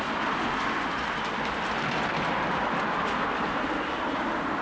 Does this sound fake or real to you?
real